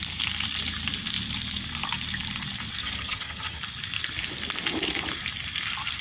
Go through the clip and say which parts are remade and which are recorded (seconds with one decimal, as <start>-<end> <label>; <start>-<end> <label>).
0.0-2.8 recorded; 2.8-3.6 remade; 3.6-6.0 recorded